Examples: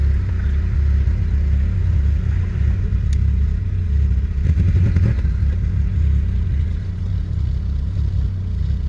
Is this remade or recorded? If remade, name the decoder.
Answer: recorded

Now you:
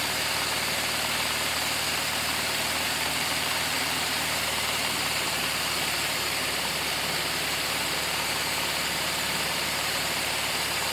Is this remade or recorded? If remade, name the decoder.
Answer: remade, vocoder, BigVGAN v2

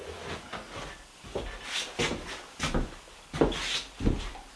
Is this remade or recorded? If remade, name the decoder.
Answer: recorded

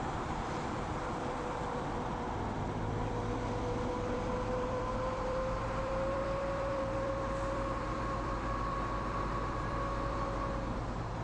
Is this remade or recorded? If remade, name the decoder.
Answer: remade, vocoder, BigVGAN v2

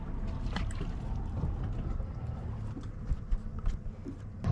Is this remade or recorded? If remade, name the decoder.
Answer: recorded